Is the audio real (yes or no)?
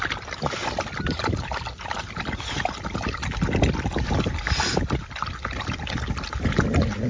yes